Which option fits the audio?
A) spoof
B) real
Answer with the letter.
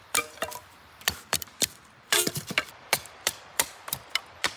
A